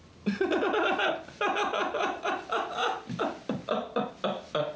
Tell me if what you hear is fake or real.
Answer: real